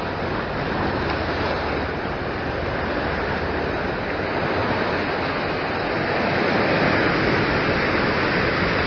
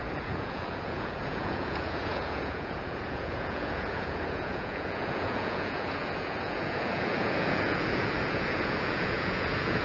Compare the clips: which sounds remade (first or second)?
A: second